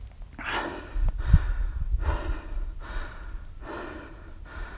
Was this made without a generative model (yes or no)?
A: yes